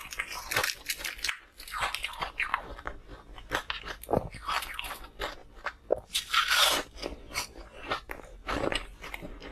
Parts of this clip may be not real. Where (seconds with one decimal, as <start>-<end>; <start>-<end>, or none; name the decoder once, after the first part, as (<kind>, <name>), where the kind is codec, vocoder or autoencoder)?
none

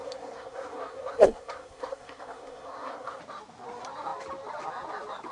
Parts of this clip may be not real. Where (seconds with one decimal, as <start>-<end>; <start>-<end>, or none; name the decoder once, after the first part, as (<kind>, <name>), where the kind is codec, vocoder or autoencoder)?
0.0-3.2 (codec, SNAC)

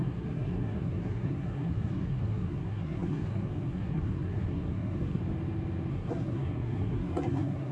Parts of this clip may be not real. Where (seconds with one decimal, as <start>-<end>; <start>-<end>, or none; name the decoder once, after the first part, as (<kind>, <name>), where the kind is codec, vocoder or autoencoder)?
0.0-5.2 (codec, SNAC); 5.9-7.7

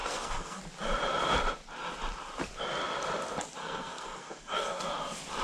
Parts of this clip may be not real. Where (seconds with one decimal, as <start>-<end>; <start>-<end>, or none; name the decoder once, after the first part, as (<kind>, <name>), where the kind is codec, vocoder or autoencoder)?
0.0-0.6 (codec, SNAC); 3.6-4.8

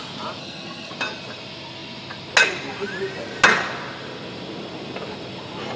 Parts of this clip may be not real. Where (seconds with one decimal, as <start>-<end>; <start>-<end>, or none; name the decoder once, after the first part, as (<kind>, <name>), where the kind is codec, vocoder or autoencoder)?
0.4-0.9 (codec, SNAC)

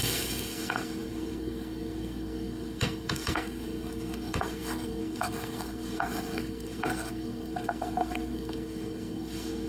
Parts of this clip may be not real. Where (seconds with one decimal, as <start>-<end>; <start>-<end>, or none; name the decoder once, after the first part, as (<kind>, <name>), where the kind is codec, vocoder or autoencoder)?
0.0-9.7 (codec, SNAC)

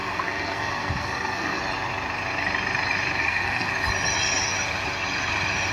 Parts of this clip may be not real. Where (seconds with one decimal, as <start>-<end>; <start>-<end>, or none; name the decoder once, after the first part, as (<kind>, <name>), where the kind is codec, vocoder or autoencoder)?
0.0-1.6 (codec, SNAC); 3.2-3.7

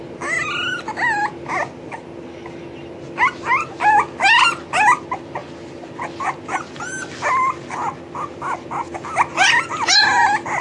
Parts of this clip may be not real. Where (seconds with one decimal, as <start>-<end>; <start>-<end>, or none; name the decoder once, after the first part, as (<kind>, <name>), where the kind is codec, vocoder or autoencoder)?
none